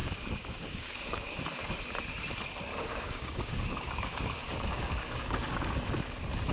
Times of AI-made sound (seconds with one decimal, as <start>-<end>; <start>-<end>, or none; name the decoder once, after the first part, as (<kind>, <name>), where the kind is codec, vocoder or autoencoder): 0.0-1.4 (codec, DAC); 2.7-5.8